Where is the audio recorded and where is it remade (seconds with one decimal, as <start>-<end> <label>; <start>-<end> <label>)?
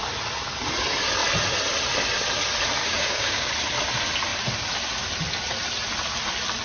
0.0-2.8 recorded; 2.8-3.5 remade; 3.5-6.6 recorded